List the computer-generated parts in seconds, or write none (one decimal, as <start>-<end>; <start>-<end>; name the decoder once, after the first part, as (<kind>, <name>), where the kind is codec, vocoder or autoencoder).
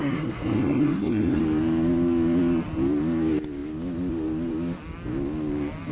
0.0-1.4 (codec, SNAC)